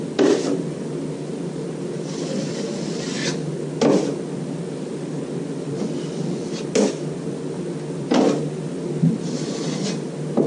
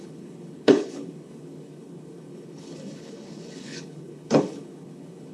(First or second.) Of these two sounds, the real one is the first